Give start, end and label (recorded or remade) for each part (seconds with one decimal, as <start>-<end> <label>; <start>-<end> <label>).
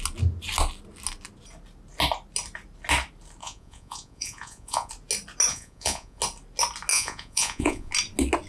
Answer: 0.0-3.4 recorded; 3.4-4.9 remade; 4.9-5.5 recorded; 5.5-6.2 remade; 6.2-6.9 recorded; 6.9-7.9 remade; 7.9-8.5 recorded